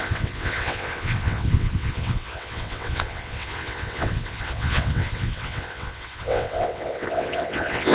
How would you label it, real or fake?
fake